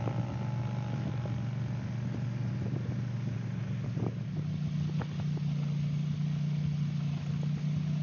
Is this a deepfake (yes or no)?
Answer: no